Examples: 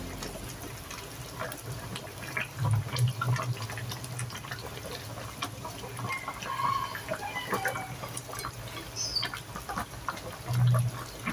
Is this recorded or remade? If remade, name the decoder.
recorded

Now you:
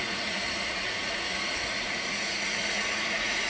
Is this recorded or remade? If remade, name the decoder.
remade, vocoder, Vocos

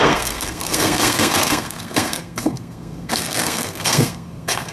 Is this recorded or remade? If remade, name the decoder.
remade, codec, SNAC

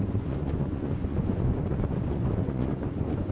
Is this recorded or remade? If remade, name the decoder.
remade, vocoder, Vocos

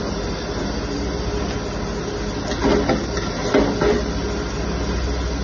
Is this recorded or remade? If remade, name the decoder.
recorded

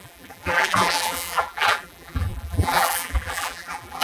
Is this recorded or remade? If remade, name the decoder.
remade, vocoder, BigVGAN v2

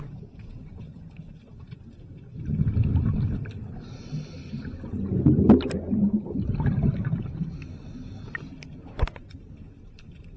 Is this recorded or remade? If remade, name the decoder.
recorded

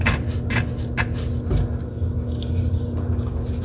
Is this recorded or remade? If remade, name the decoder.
recorded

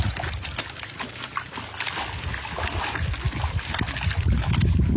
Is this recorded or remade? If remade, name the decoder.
recorded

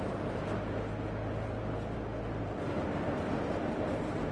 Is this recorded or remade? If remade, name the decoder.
recorded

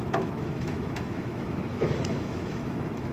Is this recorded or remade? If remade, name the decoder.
remade, autoencoder, DAC-VAE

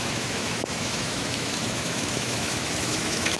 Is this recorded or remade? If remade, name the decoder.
remade, autoencoder, DAC-VAE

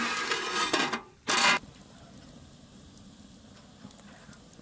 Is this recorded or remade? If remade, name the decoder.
recorded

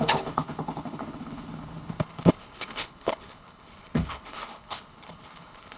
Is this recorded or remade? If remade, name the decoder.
remade, codec, HILCodec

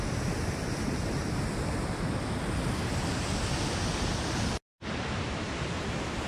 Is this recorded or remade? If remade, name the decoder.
recorded